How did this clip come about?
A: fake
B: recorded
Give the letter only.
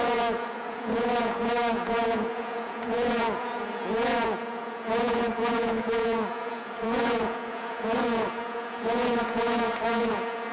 A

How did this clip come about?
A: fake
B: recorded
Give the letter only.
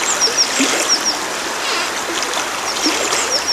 B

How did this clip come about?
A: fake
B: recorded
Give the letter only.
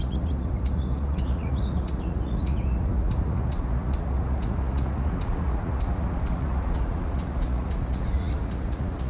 A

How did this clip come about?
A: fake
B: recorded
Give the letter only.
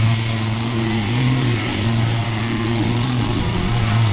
A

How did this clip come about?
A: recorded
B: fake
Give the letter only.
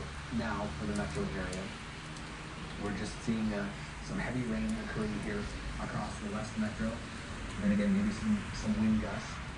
A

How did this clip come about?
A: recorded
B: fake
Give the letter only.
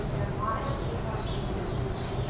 A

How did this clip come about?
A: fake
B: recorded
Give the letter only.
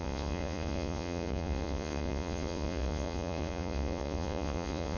A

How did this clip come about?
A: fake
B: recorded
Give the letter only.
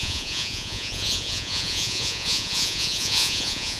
A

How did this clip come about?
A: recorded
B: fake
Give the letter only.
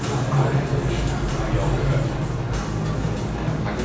A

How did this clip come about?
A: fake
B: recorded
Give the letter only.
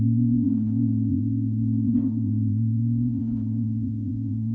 A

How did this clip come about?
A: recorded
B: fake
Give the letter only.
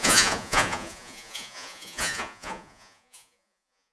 B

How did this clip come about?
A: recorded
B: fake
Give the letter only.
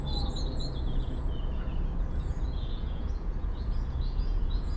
B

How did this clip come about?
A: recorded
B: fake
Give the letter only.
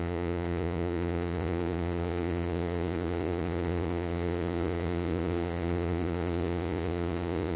B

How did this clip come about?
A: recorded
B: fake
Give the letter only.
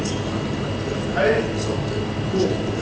A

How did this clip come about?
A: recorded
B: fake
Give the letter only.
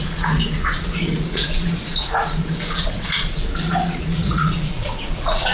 B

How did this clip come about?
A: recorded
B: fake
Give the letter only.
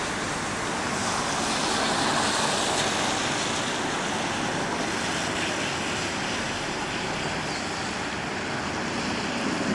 A